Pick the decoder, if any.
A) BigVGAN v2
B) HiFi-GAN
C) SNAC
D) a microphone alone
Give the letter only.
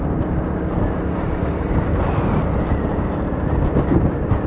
D